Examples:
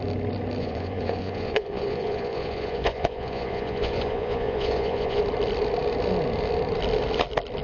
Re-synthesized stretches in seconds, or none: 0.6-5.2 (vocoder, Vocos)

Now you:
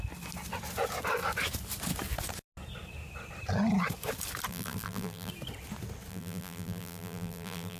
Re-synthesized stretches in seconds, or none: 4.5-5.3 (vocoder, BigVGAN v2); 6.1-7.8

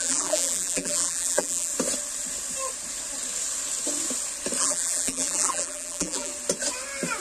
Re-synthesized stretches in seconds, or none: 0.0-1.7 (vocoder, BigVGAN v2); 4.6-6.3

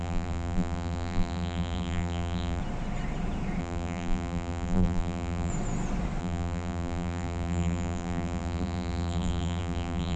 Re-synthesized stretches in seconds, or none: 0.0-2.6 (vocoder, BigVGAN v2); 3.6-5.5; 6.2-10.2

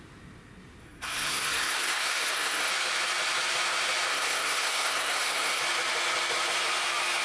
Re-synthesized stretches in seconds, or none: 0.8-2.7 (codec, SNAC); 4.1-5.6

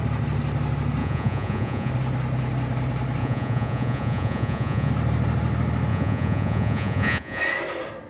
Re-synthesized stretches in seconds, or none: 1.0-1.9 (vocoder, Vocos); 3.2-4.9; 5.9-7.4

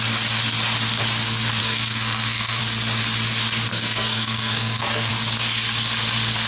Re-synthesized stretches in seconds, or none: 1.6-2.6 (codec, SNAC); 3.7-5.1

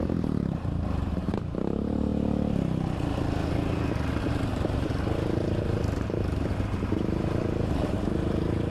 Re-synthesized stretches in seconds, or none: 0.0-2.1 (vocoder, BigVGAN v2); 4.2-8.7